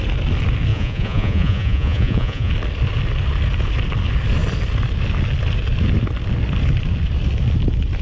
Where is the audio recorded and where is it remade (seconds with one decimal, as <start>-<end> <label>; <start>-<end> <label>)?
0.0-0.7 recorded; 0.7-2.5 remade; 2.5-8.0 recorded